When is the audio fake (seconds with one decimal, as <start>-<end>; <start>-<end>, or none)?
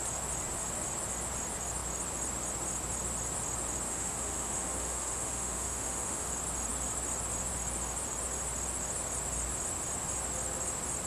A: 3.9-6.3